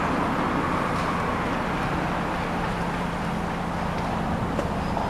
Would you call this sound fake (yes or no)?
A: no